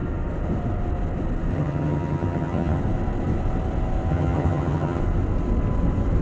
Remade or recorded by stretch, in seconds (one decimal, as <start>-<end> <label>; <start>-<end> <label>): 0.0-1.5 recorded; 1.5-2.8 remade; 2.8-4.1 recorded; 4.1-5.0 remade; 5.0-6.2 recorded